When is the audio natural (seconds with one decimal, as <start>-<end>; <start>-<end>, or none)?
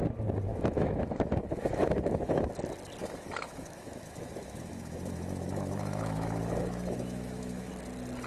0.0-0.5; 2.5-3.0; 7.7-8.3